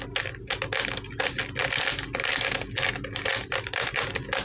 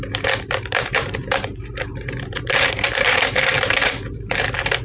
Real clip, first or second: first